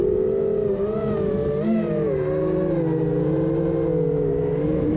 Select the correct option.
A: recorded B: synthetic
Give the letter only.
A